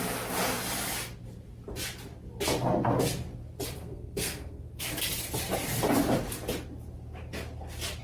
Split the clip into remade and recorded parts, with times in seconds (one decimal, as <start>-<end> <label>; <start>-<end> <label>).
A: 0.0-3.8 recorded; 3.8-4.6 remade; 4.6-8.0 recorded